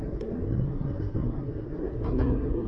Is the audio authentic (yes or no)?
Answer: no